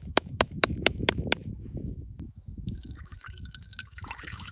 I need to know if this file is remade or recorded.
remade